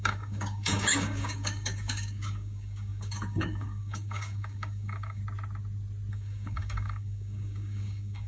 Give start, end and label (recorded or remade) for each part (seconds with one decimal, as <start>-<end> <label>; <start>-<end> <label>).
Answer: 0.0-5.2 remade; 5.2-6.1 recorded; 6.1-8.3 remade